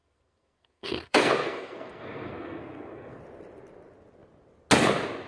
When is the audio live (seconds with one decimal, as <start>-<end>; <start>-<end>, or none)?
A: 3.2-5.3